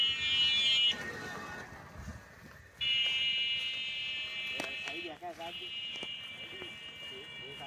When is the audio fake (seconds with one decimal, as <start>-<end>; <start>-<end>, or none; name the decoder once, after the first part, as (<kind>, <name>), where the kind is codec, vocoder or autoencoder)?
2.1-3.6 (vocoder, BigVGAN v2)